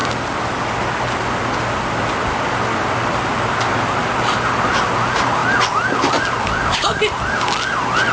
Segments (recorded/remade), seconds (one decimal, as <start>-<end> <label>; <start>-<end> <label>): 0.0-8.1 recorded